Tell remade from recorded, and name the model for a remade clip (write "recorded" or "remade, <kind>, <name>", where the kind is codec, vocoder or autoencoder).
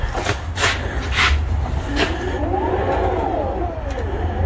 recorded